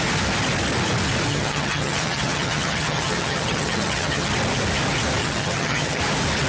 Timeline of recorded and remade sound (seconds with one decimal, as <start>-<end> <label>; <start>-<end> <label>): 0.0-1.3 recorded; 1.3-4.3 remade; 4.3-5.2 recorded; 5.2-6.0 remade; 6.0-6.5 recorded